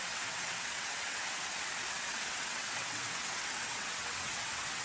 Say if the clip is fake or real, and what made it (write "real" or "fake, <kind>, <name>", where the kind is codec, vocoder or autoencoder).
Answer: fake, vocoder, WaveNeXt